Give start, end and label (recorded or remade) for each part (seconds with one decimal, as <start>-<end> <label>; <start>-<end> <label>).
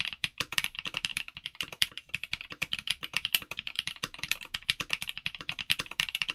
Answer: 0.0-6.3 remade